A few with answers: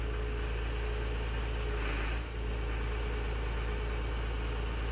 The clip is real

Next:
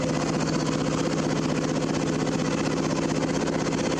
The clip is real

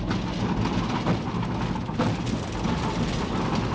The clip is real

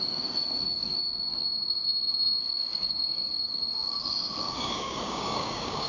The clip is fake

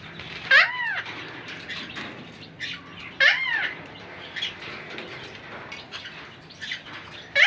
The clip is real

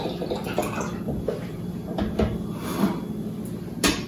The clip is real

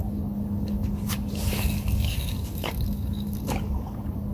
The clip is fake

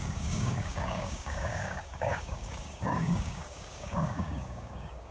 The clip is fake